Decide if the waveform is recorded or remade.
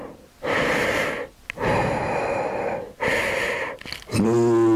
recorded